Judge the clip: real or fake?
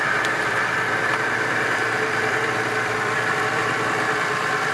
fake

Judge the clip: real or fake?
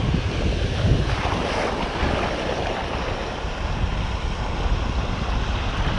real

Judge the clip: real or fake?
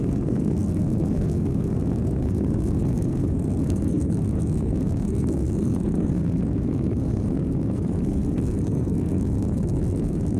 fake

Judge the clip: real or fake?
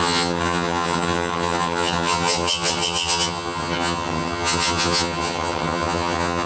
fake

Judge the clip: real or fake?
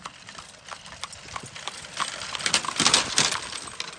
real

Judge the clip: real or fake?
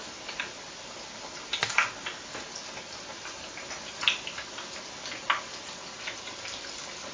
real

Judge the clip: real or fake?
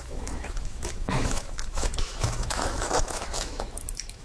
fake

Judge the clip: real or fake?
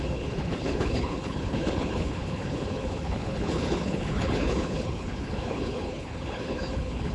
fake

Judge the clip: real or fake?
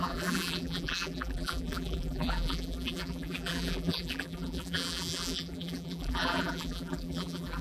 fake